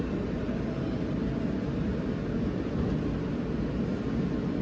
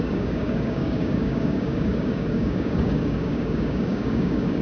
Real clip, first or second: first